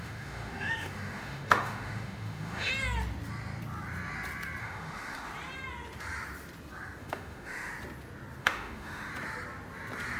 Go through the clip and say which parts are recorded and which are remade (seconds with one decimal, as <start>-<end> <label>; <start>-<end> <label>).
0.0-2.7 remade; 2.7-4.6 recorded; 4.6-5.3 remade; 5.3-7.0 recorded; 7.0-7.7 remade; 7.7-8.4 recorded; 8.4-9.1 remade; 9.1-10.2 recorded